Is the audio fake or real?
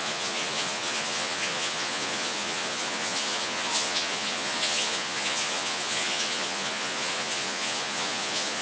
fake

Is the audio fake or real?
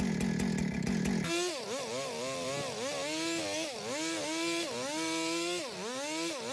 real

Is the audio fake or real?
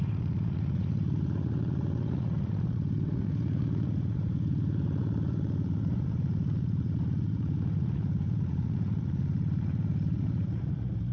fake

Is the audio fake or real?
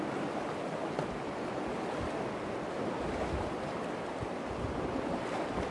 real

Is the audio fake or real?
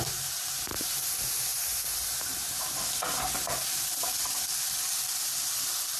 real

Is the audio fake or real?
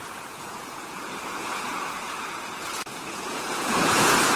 fake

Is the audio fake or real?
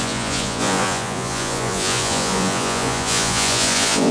fake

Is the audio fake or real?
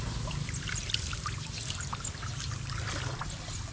real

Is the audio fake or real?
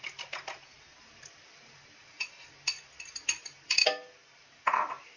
real